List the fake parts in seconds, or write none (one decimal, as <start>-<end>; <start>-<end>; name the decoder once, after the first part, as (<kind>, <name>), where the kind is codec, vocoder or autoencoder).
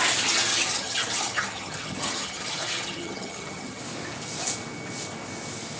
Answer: 0.5-3.8 (vocoder, HiFi-GAN)